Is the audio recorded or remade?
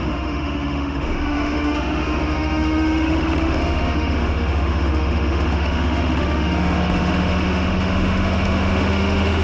remade